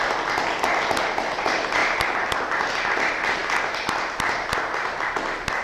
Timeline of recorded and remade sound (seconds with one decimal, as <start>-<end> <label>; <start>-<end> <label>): 0.0-1.8 recorded; 1.8-2.6 remade; 2.6-5.6 recorded